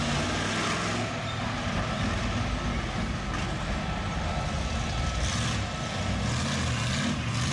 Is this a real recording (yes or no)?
yes